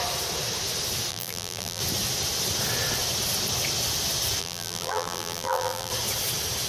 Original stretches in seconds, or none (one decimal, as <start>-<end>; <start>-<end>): 0.0-1.1; 1.8-4.4; 5.9-6.7